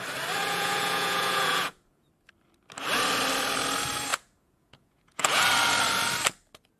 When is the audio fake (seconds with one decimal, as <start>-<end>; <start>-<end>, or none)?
0.4-2.1; 4.1-5.4